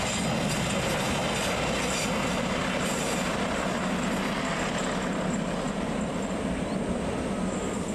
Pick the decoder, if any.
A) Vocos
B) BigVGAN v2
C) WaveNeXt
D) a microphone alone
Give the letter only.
D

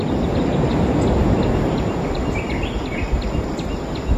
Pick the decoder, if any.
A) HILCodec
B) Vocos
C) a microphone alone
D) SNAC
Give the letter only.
C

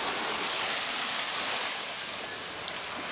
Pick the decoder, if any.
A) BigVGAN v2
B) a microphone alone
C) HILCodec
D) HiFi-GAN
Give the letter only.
B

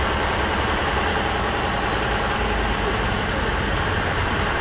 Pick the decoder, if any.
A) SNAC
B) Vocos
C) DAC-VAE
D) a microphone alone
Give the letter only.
D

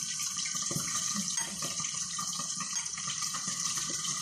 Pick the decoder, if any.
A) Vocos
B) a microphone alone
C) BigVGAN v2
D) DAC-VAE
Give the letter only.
C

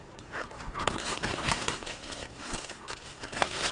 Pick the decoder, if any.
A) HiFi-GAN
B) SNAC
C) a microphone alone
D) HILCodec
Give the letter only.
B